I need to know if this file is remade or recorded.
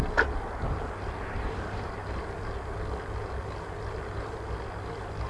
recorded